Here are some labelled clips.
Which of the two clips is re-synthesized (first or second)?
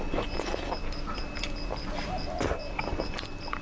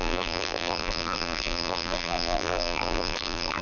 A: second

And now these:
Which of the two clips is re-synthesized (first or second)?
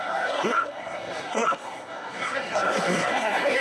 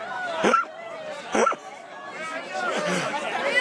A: first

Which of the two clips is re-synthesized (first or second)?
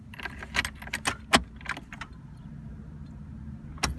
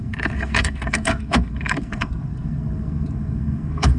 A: second